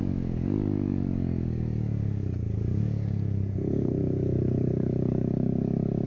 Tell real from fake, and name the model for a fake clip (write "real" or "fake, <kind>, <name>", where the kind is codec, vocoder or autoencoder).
fake, codec, DAC